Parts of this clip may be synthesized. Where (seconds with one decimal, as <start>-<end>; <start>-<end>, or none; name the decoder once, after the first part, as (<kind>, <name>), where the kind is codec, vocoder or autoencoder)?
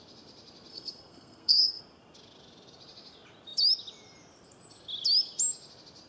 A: 0.7-1.8 (codec, SNAC)